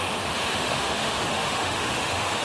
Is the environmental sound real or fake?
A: fake